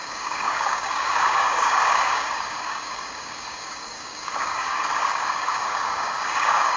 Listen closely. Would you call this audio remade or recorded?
remade